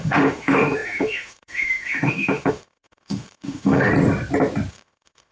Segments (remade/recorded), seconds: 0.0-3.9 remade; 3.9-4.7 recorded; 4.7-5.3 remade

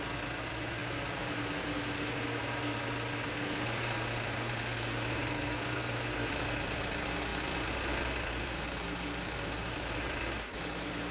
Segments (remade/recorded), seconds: 0.0-5.5 recorded; 5.5-6.3 remade; 6.3-11.1 recorded

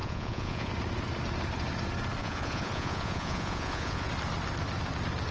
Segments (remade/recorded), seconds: 0.0-0.7 remade; 0.7-2.2 recorded; 2.2-4.1 remade; 4.1-5.3 recorded

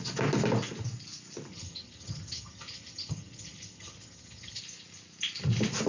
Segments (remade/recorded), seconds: 0.0-1.5 recorded; 1.5-4.6 remade; 4.6-5.9 recorded

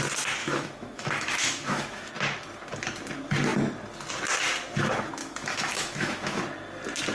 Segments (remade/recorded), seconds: 0.0-0.4 recorded; 0.4-2.1 remade; 2.1-5.2 recorded; 5.2-6.4 remade; 6.4-7.1 recorded

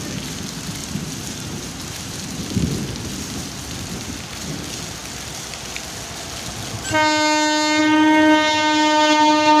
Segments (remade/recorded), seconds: 0.0-0.8 recorded; 0.8-2.4 remade; 2.4-9.6 recorded

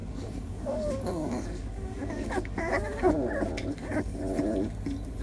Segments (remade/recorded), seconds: 0.0-3.1 remade; 3.1-3.6 recorded; 3.6-4.2 remade; 4.2-5.2 recorded

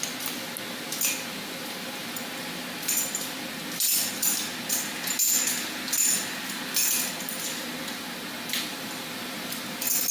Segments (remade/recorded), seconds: 0.0-8.7 recorded; 8.7-9.6 remade; 9.6-10.1 recorded